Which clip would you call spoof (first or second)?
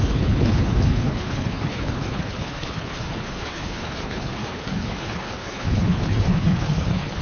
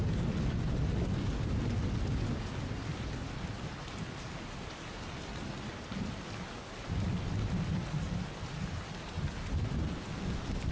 first